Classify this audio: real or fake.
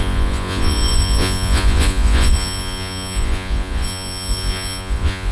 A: fake